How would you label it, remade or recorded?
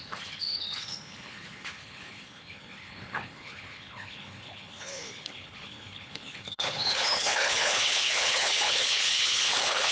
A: remade